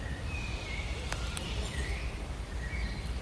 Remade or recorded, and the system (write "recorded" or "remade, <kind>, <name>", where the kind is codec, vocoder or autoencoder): remade, vocoder, BigVGAN v2